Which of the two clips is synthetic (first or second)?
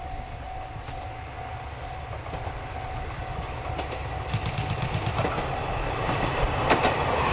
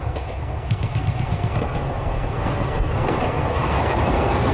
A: second